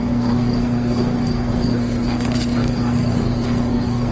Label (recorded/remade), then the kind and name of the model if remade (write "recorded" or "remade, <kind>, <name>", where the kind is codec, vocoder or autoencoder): remade, codec, SNAC